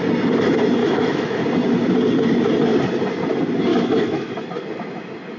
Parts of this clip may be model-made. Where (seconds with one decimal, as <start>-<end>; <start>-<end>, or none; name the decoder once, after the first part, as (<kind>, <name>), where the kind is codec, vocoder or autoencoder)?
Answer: 0.8-1.4 (autoencoder, DAC-VAE); 3.7-4.4